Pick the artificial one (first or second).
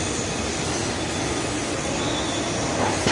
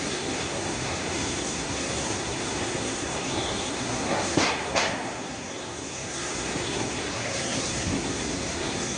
second